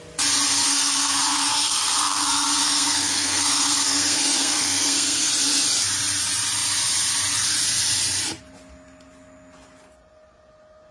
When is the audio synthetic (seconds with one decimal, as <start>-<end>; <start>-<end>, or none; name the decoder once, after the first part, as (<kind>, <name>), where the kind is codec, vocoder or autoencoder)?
0.5-5.3 (codec, SNAC)